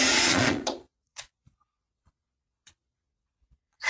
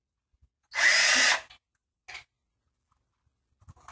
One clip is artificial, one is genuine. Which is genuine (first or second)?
second